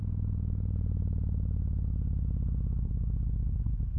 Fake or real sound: real